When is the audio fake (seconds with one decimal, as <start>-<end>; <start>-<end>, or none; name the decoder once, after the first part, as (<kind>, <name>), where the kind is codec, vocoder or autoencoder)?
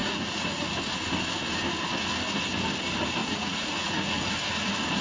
0.0-0.7 (vocoder, Vocos); 3.2-4.3